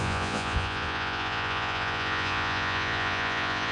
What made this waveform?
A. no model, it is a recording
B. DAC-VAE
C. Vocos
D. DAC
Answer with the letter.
C